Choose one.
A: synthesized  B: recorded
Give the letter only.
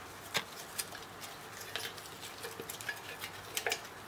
B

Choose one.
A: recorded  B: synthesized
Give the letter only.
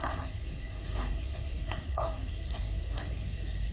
B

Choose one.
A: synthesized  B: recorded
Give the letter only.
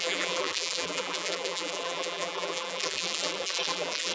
A